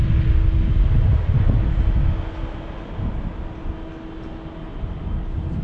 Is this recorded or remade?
recorded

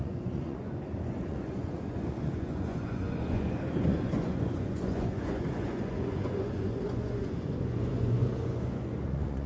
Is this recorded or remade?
remade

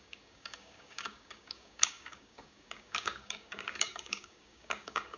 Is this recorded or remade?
remade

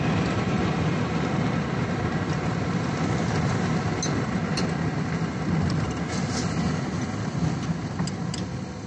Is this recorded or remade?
recorded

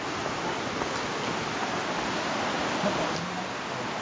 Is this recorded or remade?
recorded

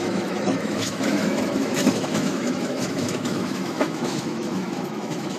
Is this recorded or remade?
remade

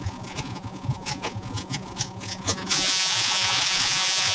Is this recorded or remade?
remade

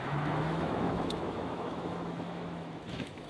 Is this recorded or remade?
remade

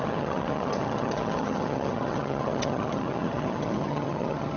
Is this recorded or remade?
remade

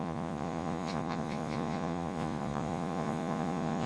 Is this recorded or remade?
remade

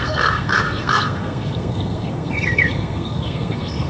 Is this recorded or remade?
remade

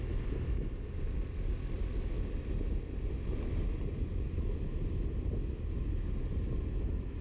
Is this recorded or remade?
recorded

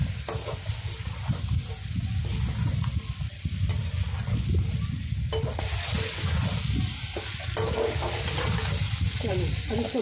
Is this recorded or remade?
recorded